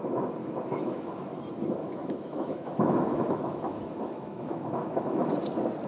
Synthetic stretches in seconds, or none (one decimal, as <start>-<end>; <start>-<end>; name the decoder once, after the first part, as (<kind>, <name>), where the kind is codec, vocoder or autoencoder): 0.4-1.2 (autoencoder, DAC-VAE); 1.8-5.3